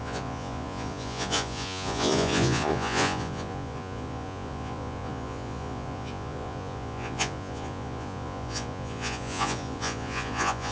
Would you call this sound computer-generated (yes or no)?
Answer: yes